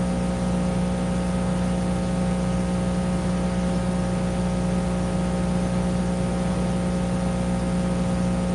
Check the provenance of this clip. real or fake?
real